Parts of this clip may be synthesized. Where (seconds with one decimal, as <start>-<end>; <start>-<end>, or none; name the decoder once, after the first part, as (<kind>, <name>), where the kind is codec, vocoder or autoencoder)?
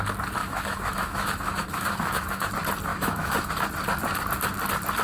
0.4-2.5 (autoencoder, DAC-VAE); 2.9-3.5